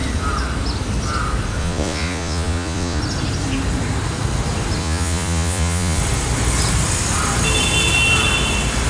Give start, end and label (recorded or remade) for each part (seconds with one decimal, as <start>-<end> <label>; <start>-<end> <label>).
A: 0.0-1.6 recorded; 1.6-3.0 remade; 3.0-4.8 recorded; 4.8-6.0 remade; 6.0-8.9 recorded